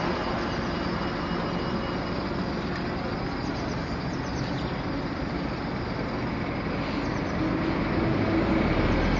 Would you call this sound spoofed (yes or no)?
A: no